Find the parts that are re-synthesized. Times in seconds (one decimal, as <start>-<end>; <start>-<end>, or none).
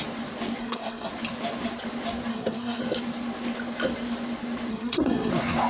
0.6-1.1; 2.3-2.8; 4.7-5.3